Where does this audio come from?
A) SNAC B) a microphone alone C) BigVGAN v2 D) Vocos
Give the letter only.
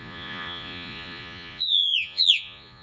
D